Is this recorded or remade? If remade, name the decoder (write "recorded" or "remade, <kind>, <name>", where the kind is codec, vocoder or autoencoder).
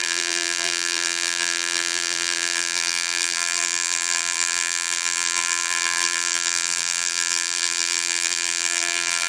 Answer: remade, vocoder, BigVGAN v2